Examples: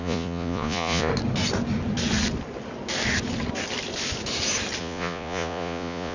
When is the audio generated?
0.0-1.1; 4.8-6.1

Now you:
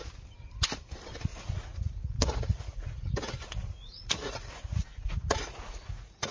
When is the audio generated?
1.3-3.1; 3.6-6.3